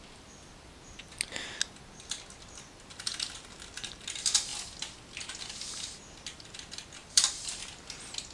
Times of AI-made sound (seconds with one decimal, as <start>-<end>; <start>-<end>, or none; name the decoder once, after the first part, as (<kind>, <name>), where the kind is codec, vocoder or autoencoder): 7.0-7.8 (vocoder, BigVGAN v2)

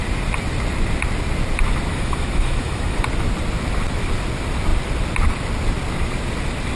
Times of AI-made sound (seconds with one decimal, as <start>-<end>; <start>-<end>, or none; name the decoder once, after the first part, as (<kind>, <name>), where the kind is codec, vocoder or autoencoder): 1.9-3.0 (autoencoder, DAC-VAE)